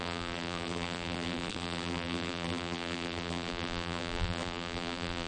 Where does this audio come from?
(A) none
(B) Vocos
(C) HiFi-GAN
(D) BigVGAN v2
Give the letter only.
D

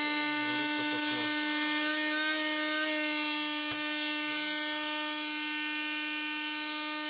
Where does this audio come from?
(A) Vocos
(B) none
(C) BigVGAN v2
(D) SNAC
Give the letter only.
B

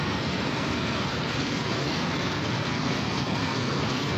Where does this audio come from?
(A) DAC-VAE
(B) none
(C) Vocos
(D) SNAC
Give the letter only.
D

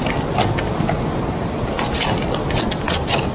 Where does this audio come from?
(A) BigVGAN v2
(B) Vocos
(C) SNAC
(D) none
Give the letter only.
D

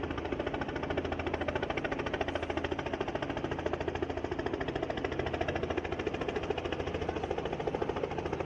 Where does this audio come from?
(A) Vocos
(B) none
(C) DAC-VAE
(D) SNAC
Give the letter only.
B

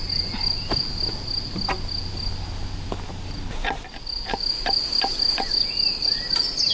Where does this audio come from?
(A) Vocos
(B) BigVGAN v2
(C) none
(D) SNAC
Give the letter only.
C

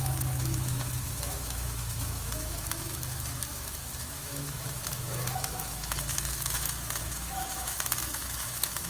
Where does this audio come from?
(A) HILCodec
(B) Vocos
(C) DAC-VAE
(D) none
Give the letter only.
C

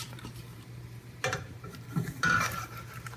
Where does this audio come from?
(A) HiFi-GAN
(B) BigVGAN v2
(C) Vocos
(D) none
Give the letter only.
B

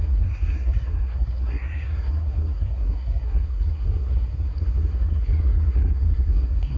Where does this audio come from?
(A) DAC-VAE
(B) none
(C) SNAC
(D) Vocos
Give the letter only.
C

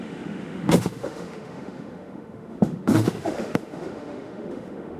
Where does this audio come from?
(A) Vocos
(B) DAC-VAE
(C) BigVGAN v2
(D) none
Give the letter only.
B